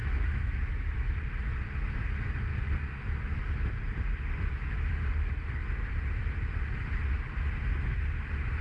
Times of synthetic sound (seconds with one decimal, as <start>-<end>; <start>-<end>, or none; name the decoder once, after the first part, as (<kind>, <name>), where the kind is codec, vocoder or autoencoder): 0.0-1.1 (autoencoder, DAC-VAE)